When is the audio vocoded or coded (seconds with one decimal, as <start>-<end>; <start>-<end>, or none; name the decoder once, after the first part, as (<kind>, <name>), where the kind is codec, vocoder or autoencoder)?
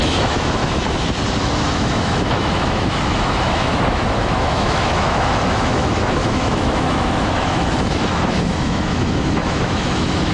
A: 0.0-0.6 (autoencoder, DAC-VAE); 1.4-10.3